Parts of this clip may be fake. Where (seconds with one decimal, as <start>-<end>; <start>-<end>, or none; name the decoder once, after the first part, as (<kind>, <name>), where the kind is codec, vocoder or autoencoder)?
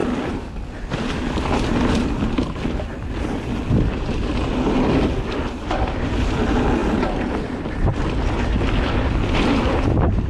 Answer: 0.0-2.9 (vocoder, BigVGAN v2); 4.5-6.8; 8.0-10.3